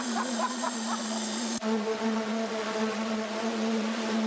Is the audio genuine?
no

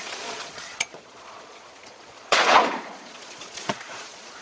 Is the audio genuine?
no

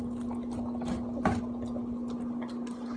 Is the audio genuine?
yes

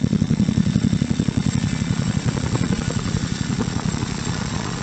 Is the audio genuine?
no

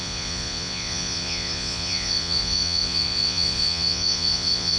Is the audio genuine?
no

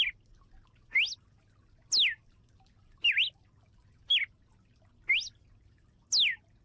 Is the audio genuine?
yes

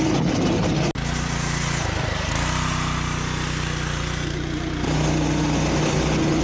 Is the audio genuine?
yes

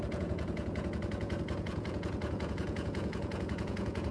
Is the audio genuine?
no